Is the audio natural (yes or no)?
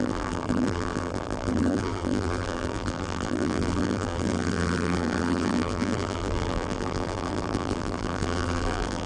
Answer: no